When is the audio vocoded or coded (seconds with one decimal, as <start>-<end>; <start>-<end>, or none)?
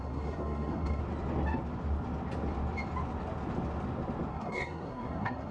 0.0-1.0; 4.3-5.5